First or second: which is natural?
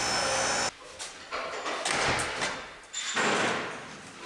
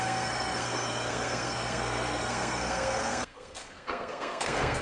first